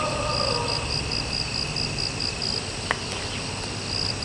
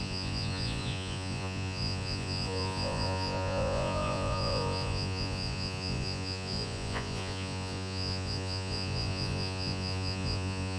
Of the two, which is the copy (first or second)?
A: second